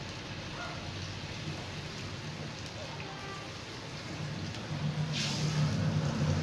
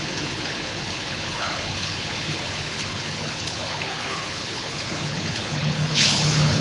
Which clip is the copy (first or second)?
second